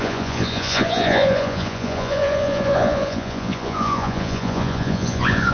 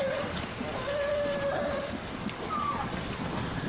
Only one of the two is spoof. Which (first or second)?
first